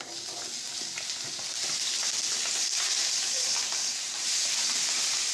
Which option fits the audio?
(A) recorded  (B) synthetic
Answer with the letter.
A